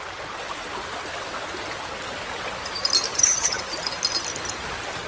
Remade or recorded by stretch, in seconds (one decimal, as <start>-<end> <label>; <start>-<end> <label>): 0.0-3.1 recorded; 3.1-3.6 remade; 3.6-5.1 recorded

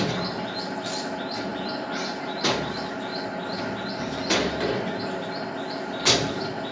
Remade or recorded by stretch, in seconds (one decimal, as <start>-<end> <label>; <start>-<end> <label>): 0.0-6.7 recorded

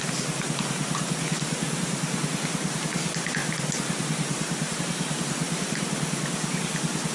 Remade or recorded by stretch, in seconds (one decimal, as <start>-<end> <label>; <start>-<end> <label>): 0.0-7.1 recorded

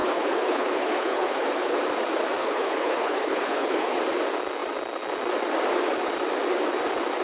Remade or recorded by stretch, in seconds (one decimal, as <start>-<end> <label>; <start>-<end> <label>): 0.0-1.8 remade; 1.8-2.4 recorded; 2.4-4.0 remade; 4.0-7.2 recorded